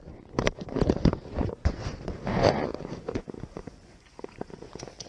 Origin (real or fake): fake